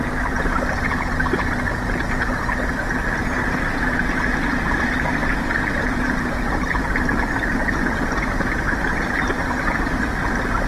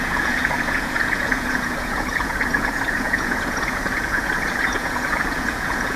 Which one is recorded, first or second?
first